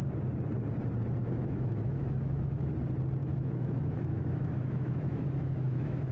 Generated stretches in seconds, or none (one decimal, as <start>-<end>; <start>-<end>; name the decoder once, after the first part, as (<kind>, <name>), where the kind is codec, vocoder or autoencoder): 1.2-2.7 (autoencoder, DAC-VAE); 3.2-6.1